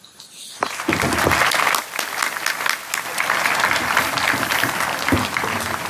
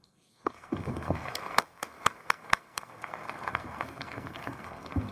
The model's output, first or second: second